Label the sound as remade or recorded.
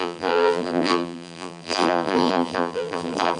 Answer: remade